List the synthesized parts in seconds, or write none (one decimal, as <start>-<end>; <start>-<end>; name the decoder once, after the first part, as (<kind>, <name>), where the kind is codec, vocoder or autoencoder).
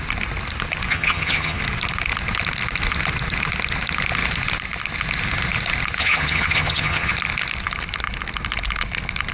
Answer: 0.9-1.6 (vocoder, HiFi-GAN); 6.0-7.1